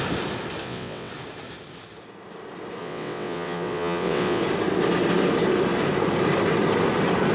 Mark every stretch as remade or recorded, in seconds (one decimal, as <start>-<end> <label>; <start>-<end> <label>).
0.0-0.6 recorded; 0.6-1.1 remade; 1.1-2.8 recorded; 2.8-4.4 remade; 4.4-7.3 recorded